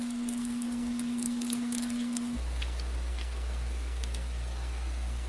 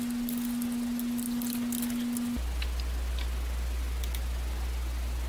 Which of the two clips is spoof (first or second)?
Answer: first